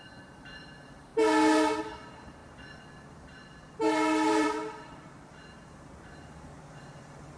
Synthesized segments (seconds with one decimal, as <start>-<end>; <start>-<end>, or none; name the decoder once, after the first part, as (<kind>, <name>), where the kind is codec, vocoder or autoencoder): 0.0-1.1 (vocoder, BigVGAN v2); 1.8-2.4; 4.3-7.4